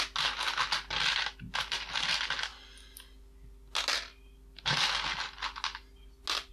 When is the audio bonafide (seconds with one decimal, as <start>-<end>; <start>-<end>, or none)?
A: 0.0-6.5